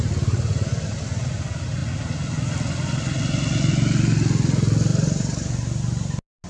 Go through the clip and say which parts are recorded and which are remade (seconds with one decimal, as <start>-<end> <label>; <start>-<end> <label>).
0.0-4.9 recorded; 4.9-5.5 remade; 5.5-6.5 recorded